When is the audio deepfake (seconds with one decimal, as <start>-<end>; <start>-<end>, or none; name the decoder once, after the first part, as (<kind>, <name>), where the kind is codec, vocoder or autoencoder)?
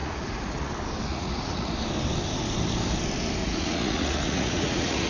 0.0-0.7 (vocoder, Vocos); 1.1-1.7; 3.4-5.1